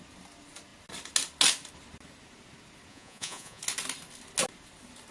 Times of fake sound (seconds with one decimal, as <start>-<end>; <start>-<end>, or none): 2.9-3.6